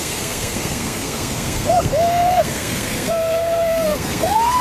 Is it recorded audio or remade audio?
remade